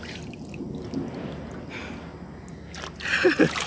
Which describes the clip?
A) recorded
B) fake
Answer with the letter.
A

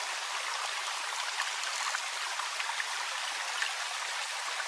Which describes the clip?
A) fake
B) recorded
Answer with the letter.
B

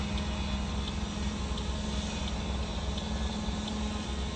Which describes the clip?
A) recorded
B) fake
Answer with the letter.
A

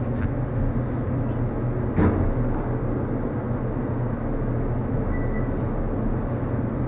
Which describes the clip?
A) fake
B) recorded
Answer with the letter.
B